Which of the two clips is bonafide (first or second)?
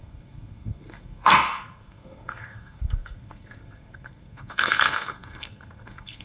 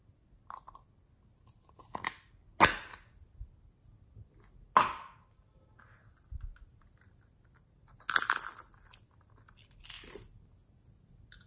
second